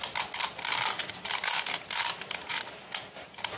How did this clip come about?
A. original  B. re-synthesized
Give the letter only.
A